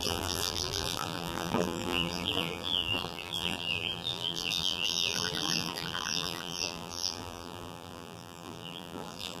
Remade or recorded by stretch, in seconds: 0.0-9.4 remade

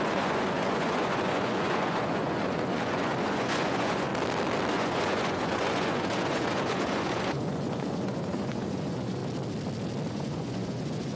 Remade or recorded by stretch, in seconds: 0.0-4.1 remade; 4.1-4.7 recorded; 4.7-9.2 remade; 9.2-10.1 recorded; 10.1-11.2 remade

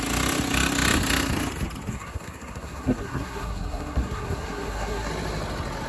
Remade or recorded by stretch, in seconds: 0.0-1.9 recorded; 1.9-5.1 remade; 5.1-5.9 recorded

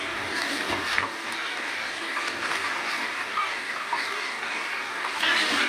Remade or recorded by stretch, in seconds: 0.0-5.7 remade

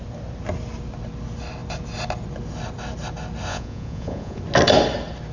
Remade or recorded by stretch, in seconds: 0.0-3.5 recorded; 3.5-4.4 remade; 4.4-5.3 recorded

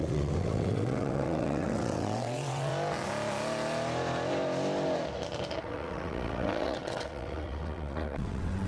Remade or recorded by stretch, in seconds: 0.0-2.7 remade; 2.7-5.6 recorded; 5.6-8.7 remade

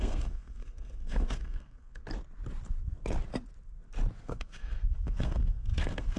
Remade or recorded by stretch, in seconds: 0.0-2.0 remade; 2.0-4.2 recorded; 4.2-6.2 remade